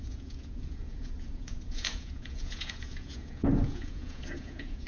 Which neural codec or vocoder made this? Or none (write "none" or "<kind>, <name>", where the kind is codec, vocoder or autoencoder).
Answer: vocoder, Vocos